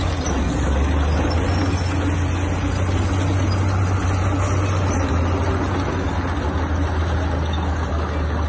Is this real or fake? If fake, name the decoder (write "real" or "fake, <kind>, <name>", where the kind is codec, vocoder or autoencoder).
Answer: real